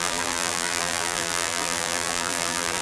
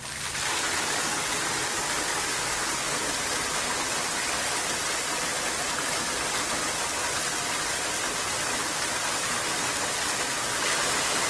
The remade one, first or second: first